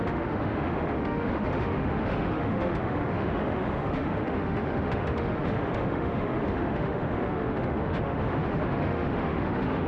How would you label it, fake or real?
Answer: fake